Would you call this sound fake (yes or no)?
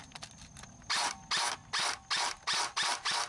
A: no